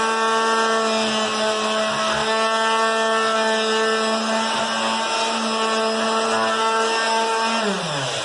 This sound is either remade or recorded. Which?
recorded